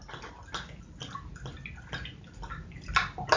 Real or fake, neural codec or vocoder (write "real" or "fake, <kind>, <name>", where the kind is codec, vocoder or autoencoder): real